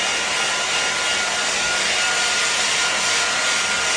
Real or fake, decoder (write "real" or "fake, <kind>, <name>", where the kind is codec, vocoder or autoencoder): real